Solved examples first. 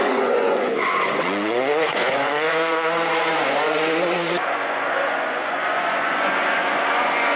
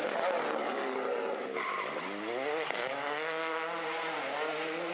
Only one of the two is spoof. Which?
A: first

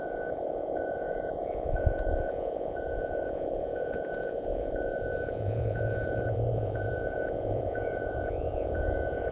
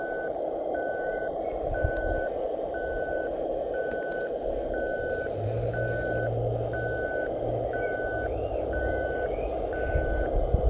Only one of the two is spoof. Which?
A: first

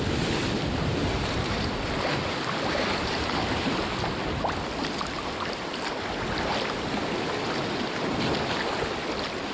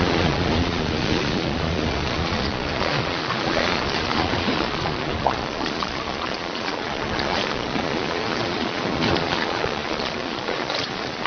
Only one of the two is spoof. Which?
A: second